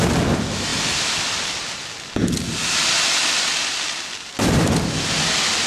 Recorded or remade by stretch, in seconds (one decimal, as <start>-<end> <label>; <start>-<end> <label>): 0.0-5.7 recorded